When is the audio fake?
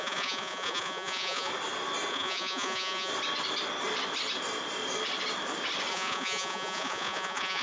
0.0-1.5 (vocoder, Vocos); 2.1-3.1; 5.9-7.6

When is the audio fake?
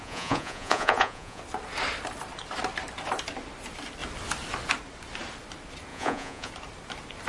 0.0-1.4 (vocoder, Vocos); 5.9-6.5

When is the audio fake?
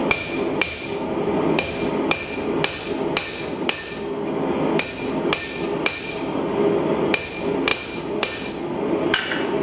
none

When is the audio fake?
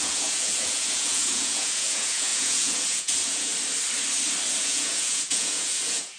0.0-3.5 (vocoder, Vocos); 4.6-6.2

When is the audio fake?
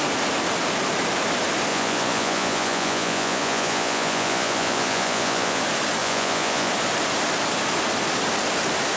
1.7-5.6 (vocoder, Vocos); 6.0-6.7